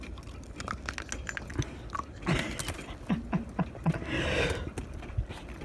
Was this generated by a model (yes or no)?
no